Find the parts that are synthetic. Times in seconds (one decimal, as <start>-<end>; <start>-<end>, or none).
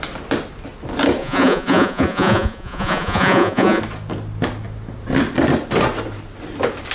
1.2-3.8